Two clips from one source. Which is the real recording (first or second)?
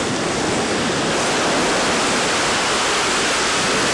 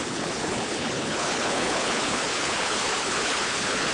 first